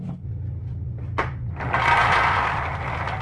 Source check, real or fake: real